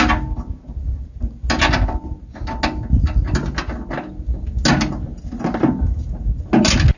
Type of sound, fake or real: real